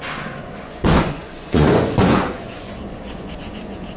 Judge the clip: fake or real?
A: fake